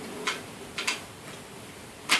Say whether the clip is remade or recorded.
recorded